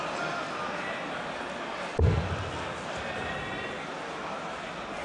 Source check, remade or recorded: recorded